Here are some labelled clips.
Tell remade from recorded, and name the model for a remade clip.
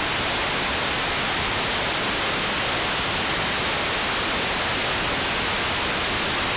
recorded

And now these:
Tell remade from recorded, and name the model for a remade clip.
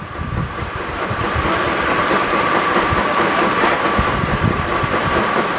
remade, vocoder, BigVGAN v2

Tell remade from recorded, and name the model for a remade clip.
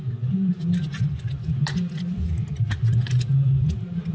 recorded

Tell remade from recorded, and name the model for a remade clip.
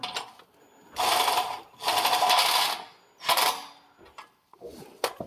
recorded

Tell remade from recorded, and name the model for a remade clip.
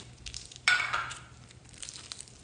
remade, vocoder, BigVGAN v2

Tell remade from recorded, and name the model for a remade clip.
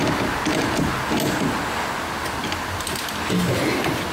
recorded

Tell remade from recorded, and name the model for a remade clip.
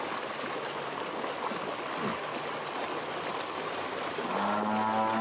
recorded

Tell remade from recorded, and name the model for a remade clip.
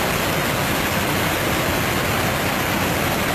recorded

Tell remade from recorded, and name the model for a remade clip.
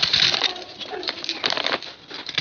remade, vocoder, BigVGAN v2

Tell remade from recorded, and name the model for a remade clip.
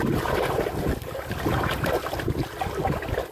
recorded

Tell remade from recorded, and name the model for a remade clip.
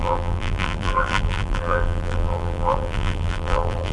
remade, vocoder, BigVGAN v2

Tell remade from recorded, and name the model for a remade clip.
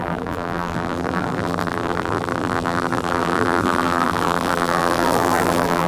remade, vocoder, BigVGAN v2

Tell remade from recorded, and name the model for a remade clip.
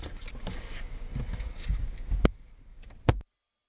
recorded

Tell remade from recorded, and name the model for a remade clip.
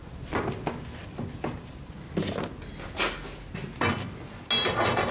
recorded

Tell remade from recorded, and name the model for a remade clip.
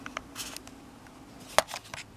recorded